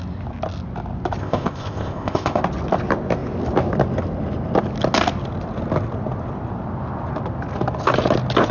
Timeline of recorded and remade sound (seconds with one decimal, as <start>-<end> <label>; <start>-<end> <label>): 0.0-1.2 recorded; 1.2-2.4 remade; 2.4-8.5 recorded